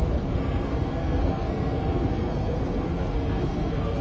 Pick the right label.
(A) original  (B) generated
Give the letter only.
B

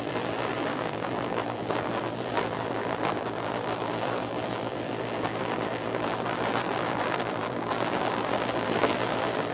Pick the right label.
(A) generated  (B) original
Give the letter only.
A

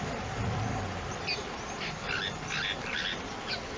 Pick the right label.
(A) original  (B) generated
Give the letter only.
A